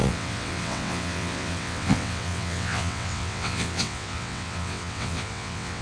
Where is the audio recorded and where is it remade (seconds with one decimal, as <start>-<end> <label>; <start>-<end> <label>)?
0.0-5.8 remade